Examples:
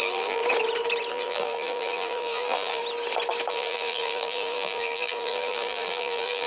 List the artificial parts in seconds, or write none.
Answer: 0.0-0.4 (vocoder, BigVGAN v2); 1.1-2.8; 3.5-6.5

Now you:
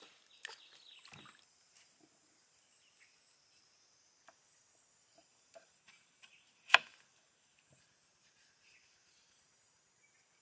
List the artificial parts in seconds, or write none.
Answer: 5.2-9.5 (vocoder, BigVGAN v2)